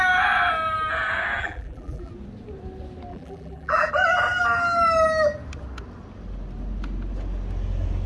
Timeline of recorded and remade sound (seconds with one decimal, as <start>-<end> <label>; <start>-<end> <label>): 0.0-1.4 recorded; 1.4-2.1 remade; 2.1-3.1 recorded; 3.1-3.9 remade; 3.9-8.1 recorded